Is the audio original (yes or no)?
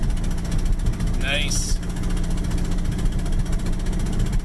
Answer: yes